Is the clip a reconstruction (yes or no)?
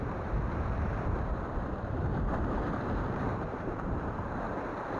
yes